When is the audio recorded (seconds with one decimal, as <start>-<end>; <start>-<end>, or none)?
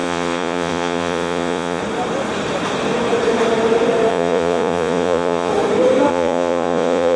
1.8-4.1; 5.5-6.1